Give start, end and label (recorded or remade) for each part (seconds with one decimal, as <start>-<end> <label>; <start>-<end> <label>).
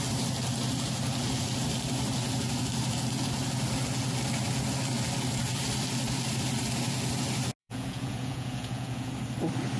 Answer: 0.0-7.6 recorded; 7.6-9.1 remade; 9.1-9.8 recorded